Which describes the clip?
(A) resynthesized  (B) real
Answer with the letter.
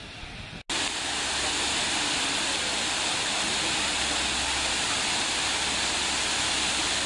B